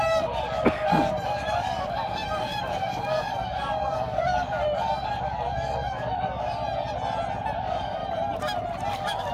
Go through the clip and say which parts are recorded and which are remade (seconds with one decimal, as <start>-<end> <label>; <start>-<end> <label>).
0.0-6.6 remade; 6.6-7.6 recorded; 7.6-8.0 remade; 8.0-8.9 recorded; 8.9-9.3 remade